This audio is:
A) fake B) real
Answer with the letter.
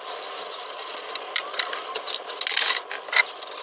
B